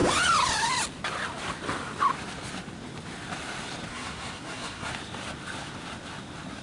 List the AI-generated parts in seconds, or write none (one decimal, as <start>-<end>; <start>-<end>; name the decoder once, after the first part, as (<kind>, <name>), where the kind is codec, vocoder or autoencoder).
3.9-4.9 (codec, SNAC)